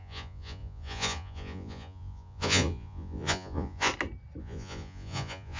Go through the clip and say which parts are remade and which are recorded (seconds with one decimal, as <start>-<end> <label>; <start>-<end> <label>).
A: 0.0-3.9 remade; 3.9-4.4 recorded; 4.4-5.6 remade